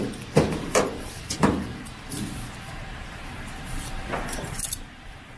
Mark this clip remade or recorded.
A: remade